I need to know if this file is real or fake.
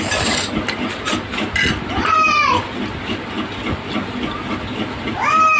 real